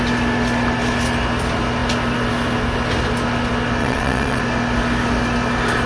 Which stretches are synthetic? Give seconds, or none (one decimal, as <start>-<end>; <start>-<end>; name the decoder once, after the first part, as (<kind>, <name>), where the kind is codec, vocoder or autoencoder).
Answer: 3.8-4.4 (vocoder, WaveNeXt)